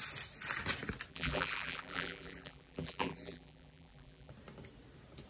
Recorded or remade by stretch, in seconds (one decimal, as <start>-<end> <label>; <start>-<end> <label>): 0.0-1.1 recorded; 1.1-4.3 remade; 4.3-5.3 recorded